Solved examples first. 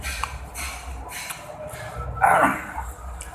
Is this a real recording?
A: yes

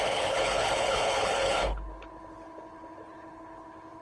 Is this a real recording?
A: no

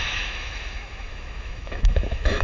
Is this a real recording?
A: no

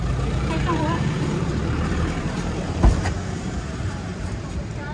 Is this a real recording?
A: no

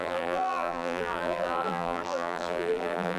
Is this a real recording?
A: no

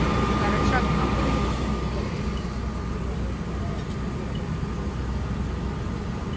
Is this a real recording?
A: yes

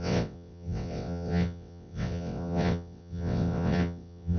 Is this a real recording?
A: no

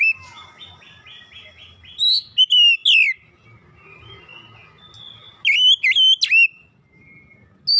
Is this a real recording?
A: yes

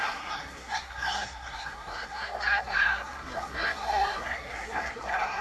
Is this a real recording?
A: no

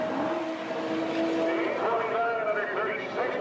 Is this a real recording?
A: yes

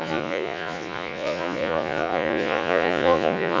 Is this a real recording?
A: no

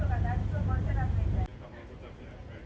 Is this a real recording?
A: yes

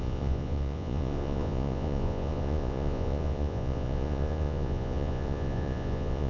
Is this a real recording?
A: no